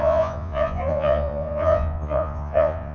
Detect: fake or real fake